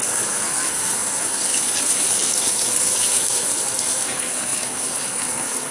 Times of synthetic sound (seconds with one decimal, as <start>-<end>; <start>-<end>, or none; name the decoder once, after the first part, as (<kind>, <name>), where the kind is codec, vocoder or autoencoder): 0.0-5.7 (codec, SNAC)